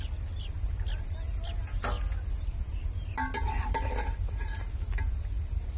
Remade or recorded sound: recorded